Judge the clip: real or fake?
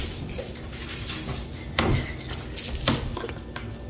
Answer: real